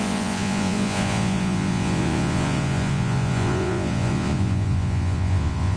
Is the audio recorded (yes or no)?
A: no